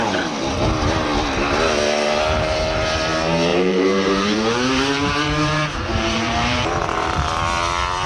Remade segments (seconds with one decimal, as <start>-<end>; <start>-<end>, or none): 3.5-7.3